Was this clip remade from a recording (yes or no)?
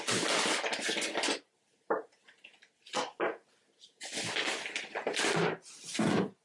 no